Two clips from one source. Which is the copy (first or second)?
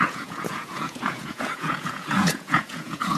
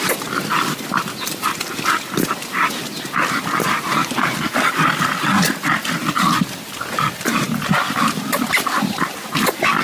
first